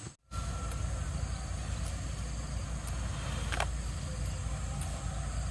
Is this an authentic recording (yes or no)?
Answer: yes